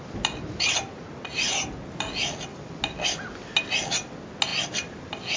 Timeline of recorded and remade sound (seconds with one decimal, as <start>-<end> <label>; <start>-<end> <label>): 0.0-4.5 recorded; 4.5-5.4 remade